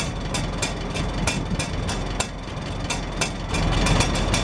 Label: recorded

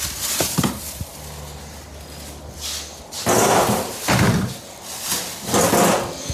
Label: recorded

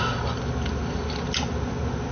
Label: recorded